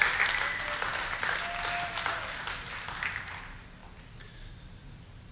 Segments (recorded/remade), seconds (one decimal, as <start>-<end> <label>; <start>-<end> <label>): 0.0-5.3 recorded